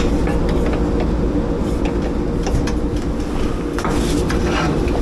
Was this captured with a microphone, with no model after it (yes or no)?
yes